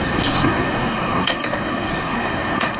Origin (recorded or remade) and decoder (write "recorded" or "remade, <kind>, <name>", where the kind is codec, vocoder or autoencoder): remade, codec, SNAC